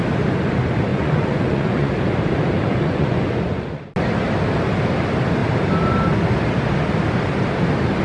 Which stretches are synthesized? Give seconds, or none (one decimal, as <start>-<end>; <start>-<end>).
0.9-1.9; 2.6-3.8